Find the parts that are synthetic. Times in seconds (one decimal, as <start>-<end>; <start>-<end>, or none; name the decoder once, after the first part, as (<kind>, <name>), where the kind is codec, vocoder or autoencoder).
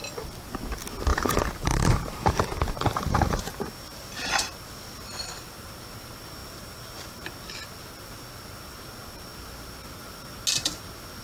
1.1-4.3 (vocoder, BigVGAN v2); 6.4-7.3